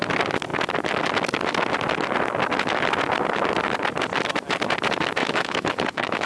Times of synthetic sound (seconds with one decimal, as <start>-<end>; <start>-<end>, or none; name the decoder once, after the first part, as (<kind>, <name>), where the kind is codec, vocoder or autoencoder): 5.2-6.3 (autoencoder, DAC-VAE)